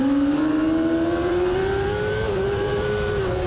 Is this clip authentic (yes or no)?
no